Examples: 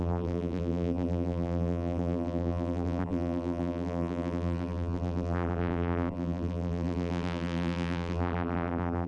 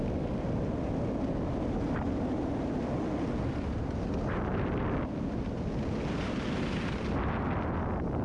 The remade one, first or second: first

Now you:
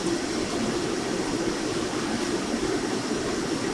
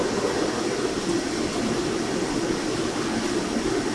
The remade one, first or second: first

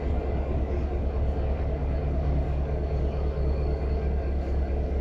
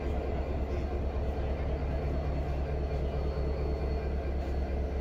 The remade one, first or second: first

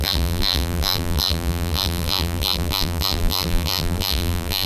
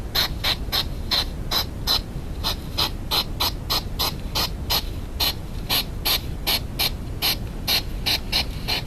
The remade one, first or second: first